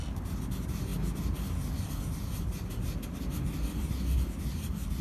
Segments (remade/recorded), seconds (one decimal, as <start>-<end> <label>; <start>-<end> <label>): 0.0-5.0 recorded